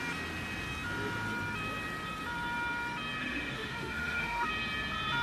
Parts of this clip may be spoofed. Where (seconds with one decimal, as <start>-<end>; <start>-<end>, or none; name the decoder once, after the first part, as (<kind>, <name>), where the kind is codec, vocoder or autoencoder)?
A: 3.2-4.5 (autoencoder, DAC-VAE)